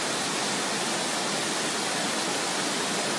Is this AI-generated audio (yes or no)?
no